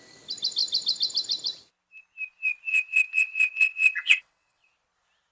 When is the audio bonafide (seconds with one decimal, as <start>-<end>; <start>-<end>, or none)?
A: 0.0-2.7; 4.7-5.3